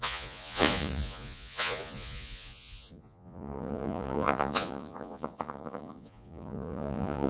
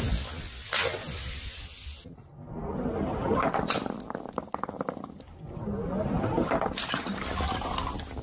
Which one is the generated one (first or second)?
first